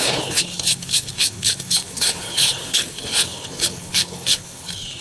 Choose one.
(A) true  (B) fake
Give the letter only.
B